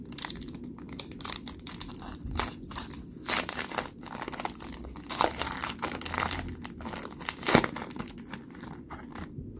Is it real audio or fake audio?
real